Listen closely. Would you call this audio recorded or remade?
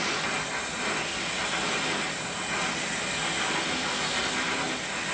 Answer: recorded